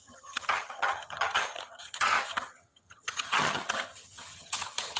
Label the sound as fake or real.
fake